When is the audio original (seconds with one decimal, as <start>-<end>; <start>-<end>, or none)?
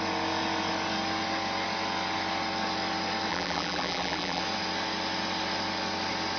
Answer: 0.0-3.3; 4.4-6.4